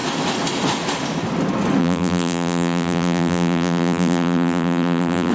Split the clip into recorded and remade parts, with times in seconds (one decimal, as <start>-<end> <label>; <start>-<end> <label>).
0.0-1.8 recorded; 1.8-5.3 remade